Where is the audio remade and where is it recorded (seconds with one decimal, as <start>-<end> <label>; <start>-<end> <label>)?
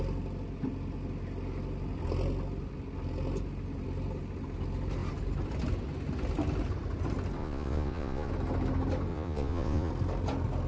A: 0.0-7.4 recorded; 7.4-8.3 remade; 8.3-9.1 recorded; 9.1-9.9 remade; 9.9-10.7 recorded